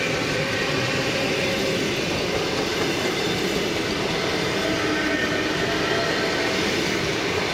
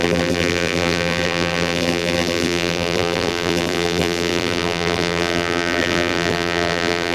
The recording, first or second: first